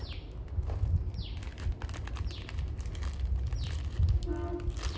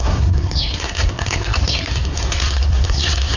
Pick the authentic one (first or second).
first